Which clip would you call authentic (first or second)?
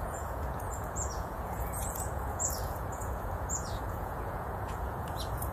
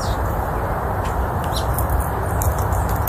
second